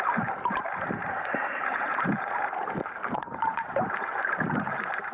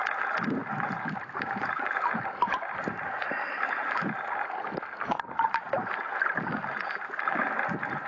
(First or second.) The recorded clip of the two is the second